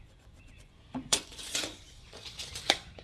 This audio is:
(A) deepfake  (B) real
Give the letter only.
A